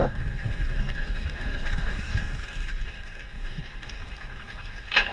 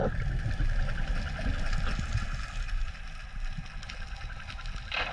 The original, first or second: second